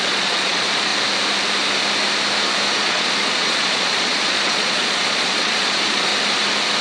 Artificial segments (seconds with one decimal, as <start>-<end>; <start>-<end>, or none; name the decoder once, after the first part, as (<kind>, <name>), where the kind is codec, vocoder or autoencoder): 0.0-0.9 (vocoder, Vocos); 2.8-6.1